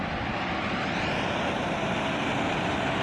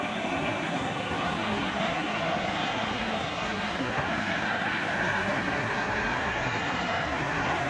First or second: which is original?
first